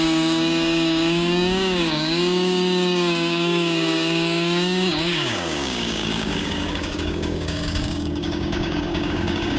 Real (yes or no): no